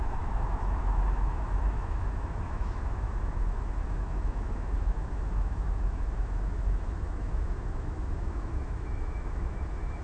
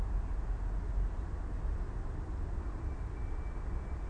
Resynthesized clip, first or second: first